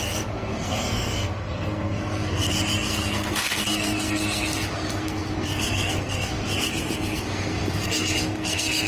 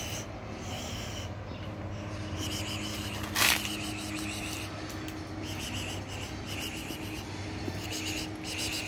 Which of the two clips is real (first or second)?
second